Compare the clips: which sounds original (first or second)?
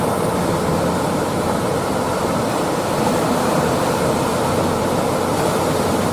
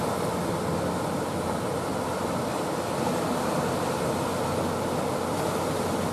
second